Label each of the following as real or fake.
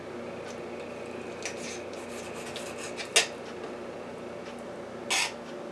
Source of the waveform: real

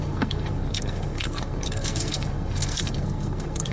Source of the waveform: fake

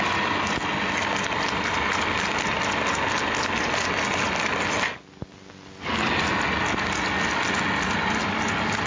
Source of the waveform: real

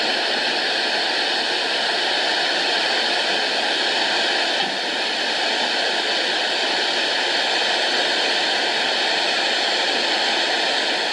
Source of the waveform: real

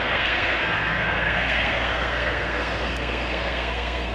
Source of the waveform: fake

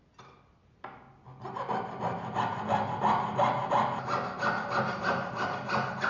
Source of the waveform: real